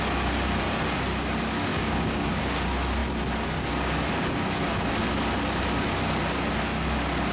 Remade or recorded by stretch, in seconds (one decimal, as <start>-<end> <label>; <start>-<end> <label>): 0.0-1.7 recorded; 1.7-2.4 remade; 2.4-7.3 recorded